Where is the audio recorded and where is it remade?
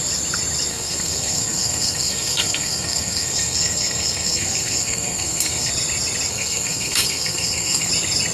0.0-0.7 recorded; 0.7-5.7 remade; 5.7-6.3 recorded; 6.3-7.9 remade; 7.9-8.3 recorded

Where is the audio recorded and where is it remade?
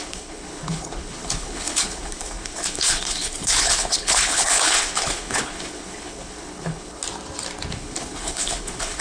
0.0-7.0 remade; 7.0-7.7 recorded; 7.7-9.0 remade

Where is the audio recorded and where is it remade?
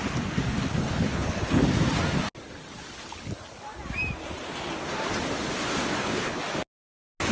0.0-0.7 recorded; 0.7-1.6 remade; 1.6-6.0 recorded; 6.0-6.4 remade; 6.4-7.3 recorded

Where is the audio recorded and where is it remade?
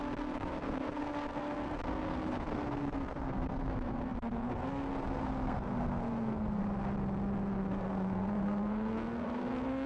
0.0-6.6 remade; 6.6-7.6 recorded; 7.6-9.9 remade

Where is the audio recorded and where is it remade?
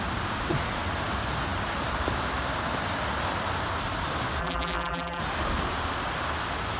0.0-4.4 recorded; 4.4-5.2 remade; 5.2-6.8 recorded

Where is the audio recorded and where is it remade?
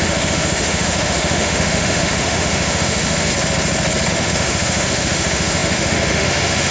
0.0-3.3 remade; 3.3-4.1 recorded; 4.1-6.7 remade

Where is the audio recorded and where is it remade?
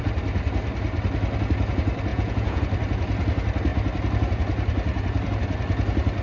0.0-2.1 recorded; 2.1-2.6 remade; 2.6-6.2 recorded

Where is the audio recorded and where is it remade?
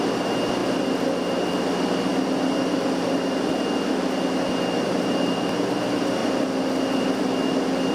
0.0-7.9 recorded